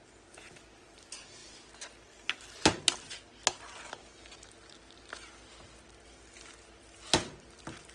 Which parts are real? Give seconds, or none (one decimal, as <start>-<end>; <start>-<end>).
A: 0.0-7.9